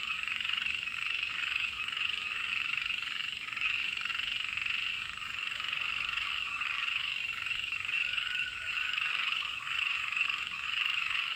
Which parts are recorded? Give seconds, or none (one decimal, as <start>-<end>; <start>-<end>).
4.1-4.9